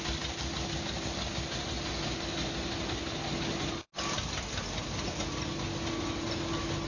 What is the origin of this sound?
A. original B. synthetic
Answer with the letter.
A